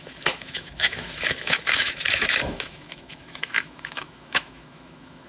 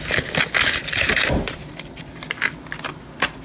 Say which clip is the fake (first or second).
first